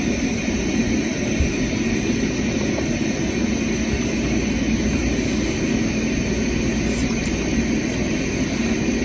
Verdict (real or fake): real